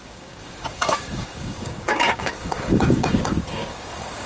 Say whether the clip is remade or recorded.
remade